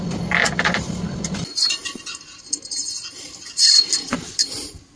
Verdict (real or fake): real